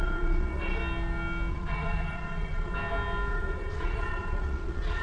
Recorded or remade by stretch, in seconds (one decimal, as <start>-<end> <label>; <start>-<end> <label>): 0.0-0.8 remade; 0.8-1.5 recorded; 1.5-2.7 remade; 2.7-3.3 recorded; 3.3-5.0 remade